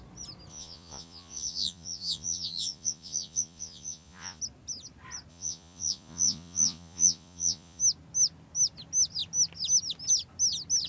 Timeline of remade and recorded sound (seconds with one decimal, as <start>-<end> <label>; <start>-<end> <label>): 0.0-0.5 recorded; 0.5-4.4 remade; 4.4-5.3 recorded; 5.3-7.8 remade; 7.8-10.9 recorded